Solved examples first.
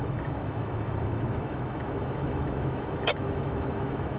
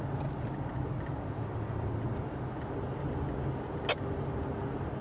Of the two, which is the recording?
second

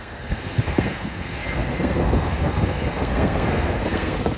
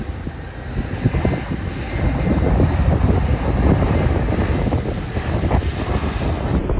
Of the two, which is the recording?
second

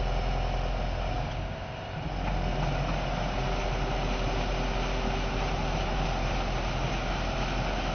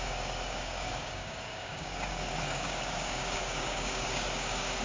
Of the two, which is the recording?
first